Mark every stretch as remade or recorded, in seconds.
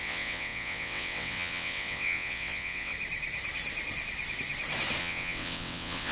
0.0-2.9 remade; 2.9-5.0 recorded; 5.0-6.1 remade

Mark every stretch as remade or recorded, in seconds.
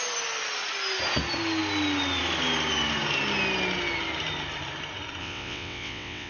0.0-5.2 recorded; 5.2-6.3 remade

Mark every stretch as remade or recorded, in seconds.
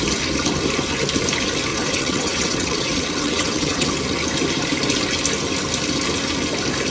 0.0-1.7 recorded; 1.7-3.9 remade; 3.9-6.9 recorded